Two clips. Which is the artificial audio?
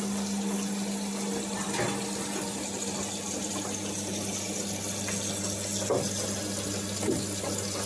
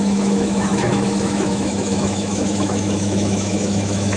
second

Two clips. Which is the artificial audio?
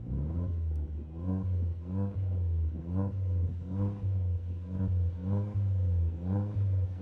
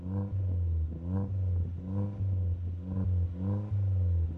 first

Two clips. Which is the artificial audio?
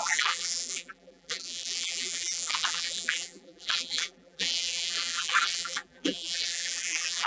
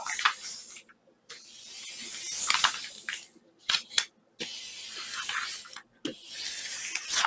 first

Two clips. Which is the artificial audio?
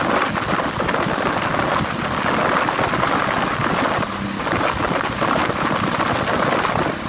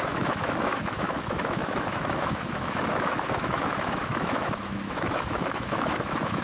second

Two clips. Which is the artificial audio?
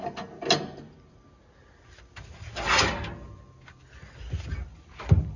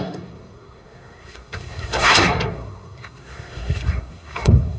second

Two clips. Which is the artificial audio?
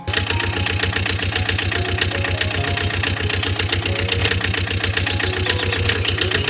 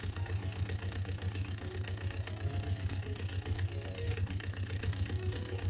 second